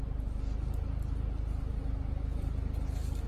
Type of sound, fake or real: real